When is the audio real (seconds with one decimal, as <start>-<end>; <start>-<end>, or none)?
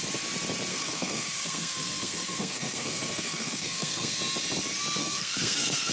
0.0-0.7; 4.2-5.0